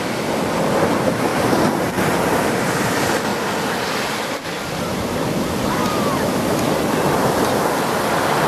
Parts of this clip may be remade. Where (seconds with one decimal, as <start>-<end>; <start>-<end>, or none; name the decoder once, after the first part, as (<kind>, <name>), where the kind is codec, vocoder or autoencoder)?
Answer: 3.3-4.1 (vocoder, BigVGAN v2); 4.9-5.6